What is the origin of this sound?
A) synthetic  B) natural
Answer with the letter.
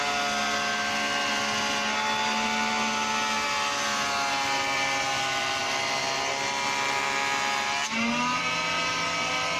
B